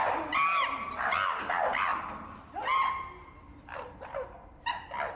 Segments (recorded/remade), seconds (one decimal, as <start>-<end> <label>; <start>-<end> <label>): 0.0-5.2 recorded

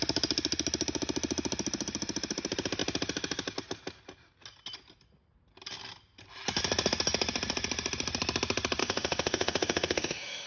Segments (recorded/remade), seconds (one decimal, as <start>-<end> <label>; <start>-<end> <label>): 0.0-8.8 recorded; 8.8-10.5 remade

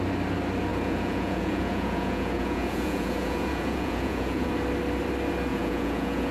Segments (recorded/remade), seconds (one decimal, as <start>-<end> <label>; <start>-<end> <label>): 0.0-0.7 recorded; 0.7-4.5 remade; 4.5-5.5 recorded; 5.5-6.3 remade

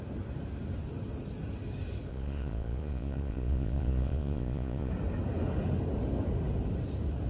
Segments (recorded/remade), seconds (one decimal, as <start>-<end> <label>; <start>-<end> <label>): 0.0-2.1 recorded; 2.1-4.9 remade; 4.9-7.3 recorded

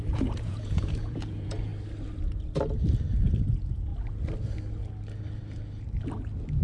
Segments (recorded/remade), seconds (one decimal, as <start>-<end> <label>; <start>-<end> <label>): 0.0-1.7 remade; 1.7-3.4 recorded; 3.4-3.9 remade; 3.9-6.6 recorded

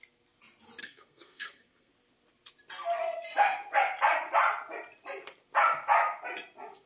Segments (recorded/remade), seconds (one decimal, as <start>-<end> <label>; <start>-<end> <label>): 0.0-0.8 recorded; 0.8-1.9 remade; 1.9-6.9 recorded

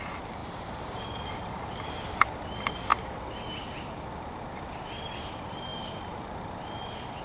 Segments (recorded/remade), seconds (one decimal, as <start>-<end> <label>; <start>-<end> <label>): 0.0-0.4 recorded; 0.4-2.0 remade; 2.0-5.7 recorded; 5.7-6.8 remade; 6.8-7.2 recorded

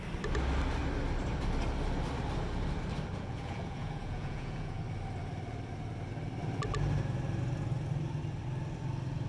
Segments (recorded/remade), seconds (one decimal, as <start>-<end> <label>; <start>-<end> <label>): 0.0-3.1 recorded; 3.1-4.8 remade; 4.8-9.3 recorded